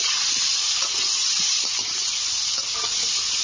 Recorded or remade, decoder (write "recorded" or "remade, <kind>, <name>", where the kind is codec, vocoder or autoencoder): recorded